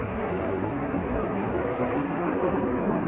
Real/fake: fake